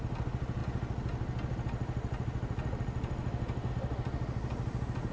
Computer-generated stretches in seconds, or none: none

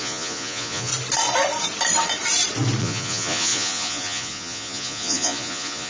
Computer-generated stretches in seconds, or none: 0.0-0.9; 2.8-5.9

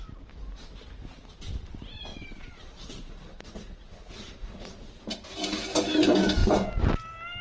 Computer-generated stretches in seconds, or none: 2.1-5.0